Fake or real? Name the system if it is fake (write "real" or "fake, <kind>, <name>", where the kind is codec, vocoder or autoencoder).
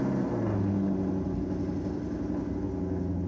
real